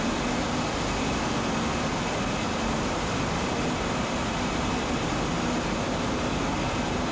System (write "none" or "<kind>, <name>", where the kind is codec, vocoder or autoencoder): none